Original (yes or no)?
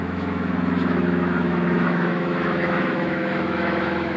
no